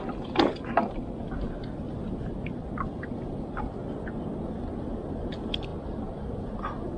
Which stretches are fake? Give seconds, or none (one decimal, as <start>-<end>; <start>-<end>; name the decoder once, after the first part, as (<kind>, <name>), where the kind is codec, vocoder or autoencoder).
none